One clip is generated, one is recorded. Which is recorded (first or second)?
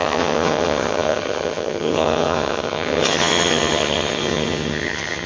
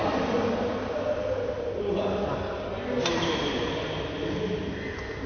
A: second